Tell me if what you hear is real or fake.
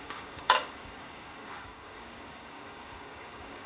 fake